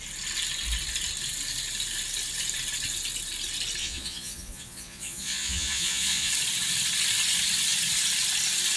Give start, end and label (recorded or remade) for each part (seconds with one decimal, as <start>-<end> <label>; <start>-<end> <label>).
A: 0.0-3.8 recorded; 3.8-6.3 remade; 6.3-8.8 recorded

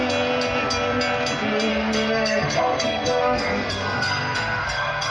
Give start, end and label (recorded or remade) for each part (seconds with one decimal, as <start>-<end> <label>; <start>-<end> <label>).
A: 0.0-1.7 recorded; 1.7-5.1 remade

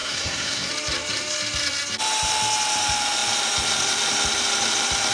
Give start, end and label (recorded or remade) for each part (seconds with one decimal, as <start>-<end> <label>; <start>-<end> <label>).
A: 0.0-0.7 remade; 0.7-5.1 recorded

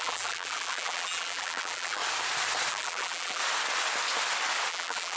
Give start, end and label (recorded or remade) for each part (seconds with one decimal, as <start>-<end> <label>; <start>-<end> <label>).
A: 0.0-2.0 remade; 2.0-2.7 recorded; 2.7-3.4 remade; 3.4-4.7 recorded; 4.7-5.2 remade